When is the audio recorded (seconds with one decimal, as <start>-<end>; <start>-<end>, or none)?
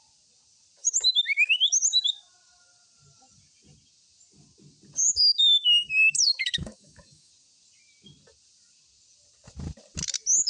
0.0-0.8; 1.9-5.4; 7.3-10.5